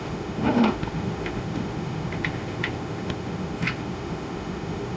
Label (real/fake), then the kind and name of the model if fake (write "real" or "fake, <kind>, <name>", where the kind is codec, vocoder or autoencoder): fake, autoencoder, DAC-VAE